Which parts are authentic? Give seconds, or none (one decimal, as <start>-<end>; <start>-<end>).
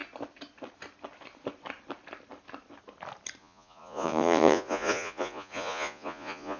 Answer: 0.0-3.4